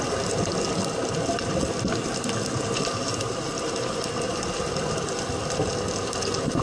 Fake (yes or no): no